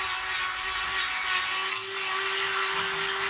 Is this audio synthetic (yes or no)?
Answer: no